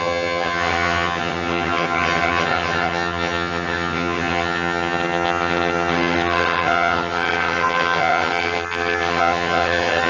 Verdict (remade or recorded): remade